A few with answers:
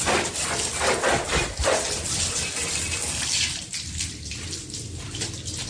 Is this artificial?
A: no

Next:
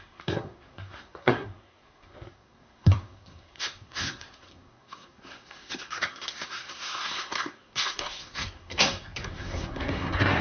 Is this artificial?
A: yes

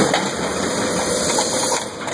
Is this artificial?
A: no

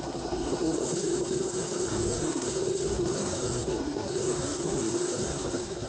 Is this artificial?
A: yes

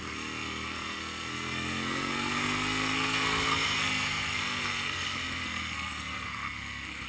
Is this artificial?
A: yes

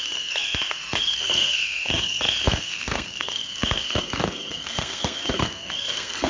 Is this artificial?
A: yes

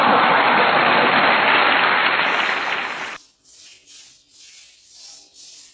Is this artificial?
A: no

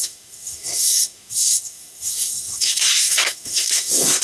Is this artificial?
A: yes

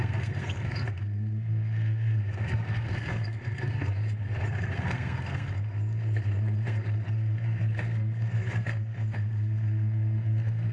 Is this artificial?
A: yes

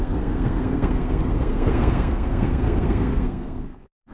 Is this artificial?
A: yes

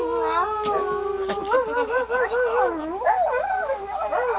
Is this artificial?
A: no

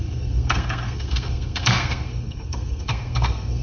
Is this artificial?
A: yes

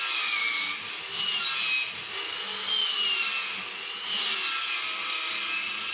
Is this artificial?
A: no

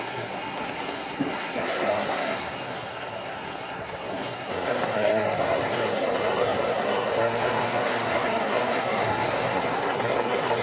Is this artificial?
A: yes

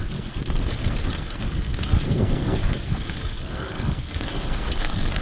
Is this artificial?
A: yes